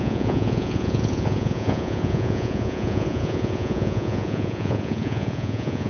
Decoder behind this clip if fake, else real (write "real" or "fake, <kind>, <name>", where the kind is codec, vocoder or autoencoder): fake, vocoder, Vocos